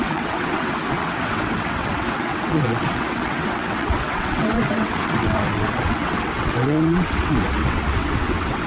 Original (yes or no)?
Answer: no